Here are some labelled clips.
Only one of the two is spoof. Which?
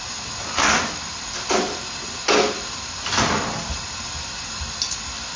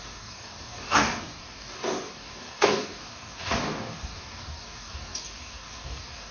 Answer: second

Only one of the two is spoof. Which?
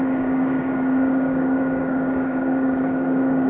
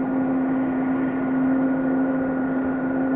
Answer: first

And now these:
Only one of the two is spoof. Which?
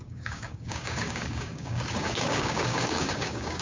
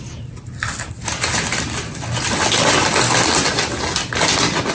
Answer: first